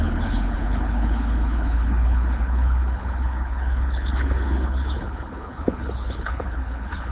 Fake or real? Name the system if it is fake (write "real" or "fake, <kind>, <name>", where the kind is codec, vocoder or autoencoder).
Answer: fake, codec, HILCodec